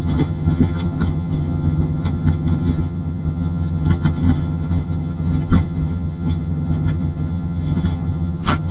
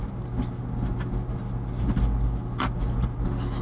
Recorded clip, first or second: second